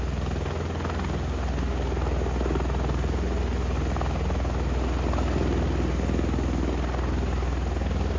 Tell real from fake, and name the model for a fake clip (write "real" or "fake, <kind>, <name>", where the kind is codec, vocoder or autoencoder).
real